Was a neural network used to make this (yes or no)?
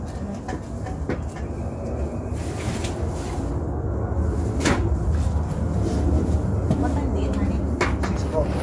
no